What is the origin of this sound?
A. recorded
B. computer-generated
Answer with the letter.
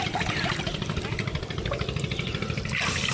A